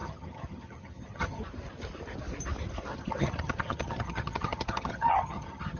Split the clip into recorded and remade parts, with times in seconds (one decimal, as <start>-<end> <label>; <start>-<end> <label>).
0.0-1.4 remade; 1.4-2.9 recorded; 2.9-5.8 remade